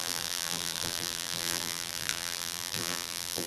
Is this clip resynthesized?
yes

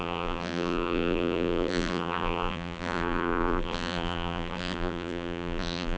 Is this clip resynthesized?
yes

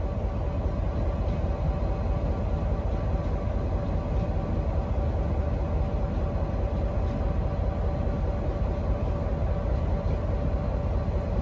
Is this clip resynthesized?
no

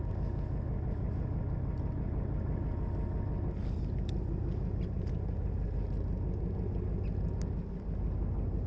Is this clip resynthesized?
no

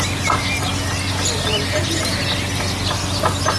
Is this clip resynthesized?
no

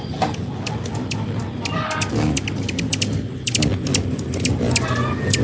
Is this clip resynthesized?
no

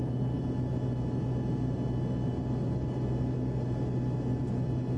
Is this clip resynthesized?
no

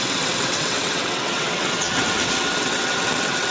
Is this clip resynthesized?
yes